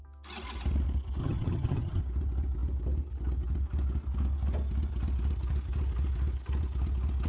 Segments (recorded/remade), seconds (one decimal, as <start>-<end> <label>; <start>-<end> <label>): 0.0-1.2 recorded; 1.2-2.0 remade; 2.0-7.3 recorded

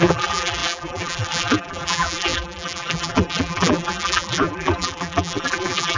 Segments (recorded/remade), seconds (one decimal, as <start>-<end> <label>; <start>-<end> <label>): 0.0-6.0 remade

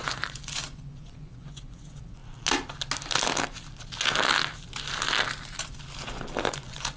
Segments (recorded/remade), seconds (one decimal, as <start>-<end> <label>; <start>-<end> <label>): 0.0-2.2 remade; 2.2-6.4 recorded; 6.4-7.0 remade